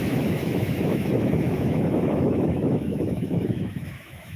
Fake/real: fake